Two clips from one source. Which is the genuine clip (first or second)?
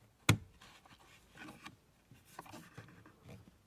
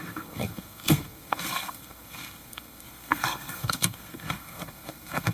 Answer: first